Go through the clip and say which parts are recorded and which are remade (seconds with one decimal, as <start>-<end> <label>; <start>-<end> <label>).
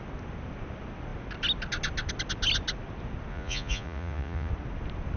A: 0.0-3.3 recorded; 3.3-4.5 remade; 4.5-5.2 recorded